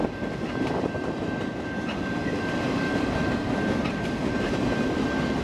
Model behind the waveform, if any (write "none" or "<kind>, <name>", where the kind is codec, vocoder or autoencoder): none